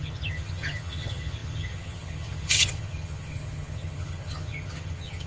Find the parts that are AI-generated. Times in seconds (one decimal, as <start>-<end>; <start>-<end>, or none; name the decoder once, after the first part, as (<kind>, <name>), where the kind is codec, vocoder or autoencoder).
0.0-5.3 (vocoder, HiFi-GAN)